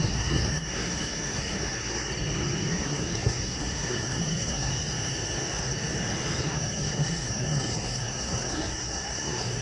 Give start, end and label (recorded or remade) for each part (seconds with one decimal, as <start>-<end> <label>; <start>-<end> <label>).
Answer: 0.0-2.1 remade; 2.1-2.7 recorded; 2.7-4.7 remade; 4.7-6.4 recorded; 6.4-9.6 remade